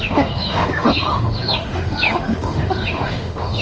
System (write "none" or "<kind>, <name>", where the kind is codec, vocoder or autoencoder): autoencoder, DAC-VAE